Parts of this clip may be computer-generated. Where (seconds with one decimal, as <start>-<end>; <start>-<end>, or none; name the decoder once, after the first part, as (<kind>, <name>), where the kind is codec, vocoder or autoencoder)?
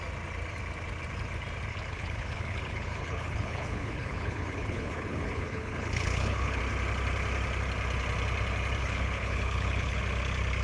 1.7-6.6 (codec, HILCodec); 8.8-10.0